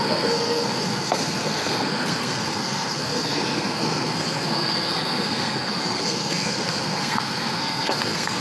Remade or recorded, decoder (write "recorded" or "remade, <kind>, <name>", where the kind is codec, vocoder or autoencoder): remade, codec, SNAC